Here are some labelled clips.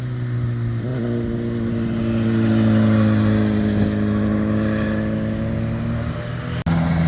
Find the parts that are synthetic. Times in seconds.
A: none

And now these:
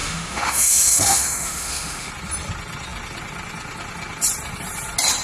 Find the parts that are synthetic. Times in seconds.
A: 0.0-2.1 (autoencoder, DAC-VAE)